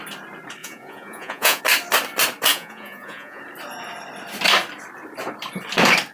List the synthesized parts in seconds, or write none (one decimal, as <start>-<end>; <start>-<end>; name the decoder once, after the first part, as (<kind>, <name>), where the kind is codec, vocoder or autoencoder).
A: 0.6-1.6 (vocoder, Vocos); 2.5-3.4